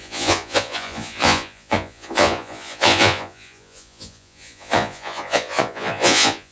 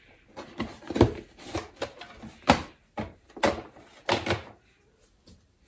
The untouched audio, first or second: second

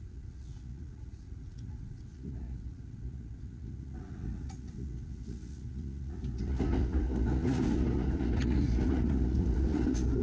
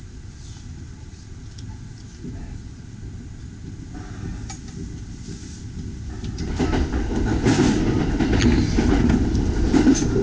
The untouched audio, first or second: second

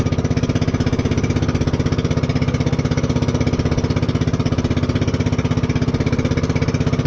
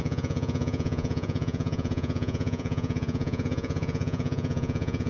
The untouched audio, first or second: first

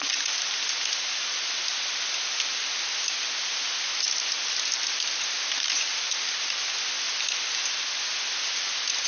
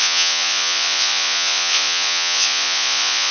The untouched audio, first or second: first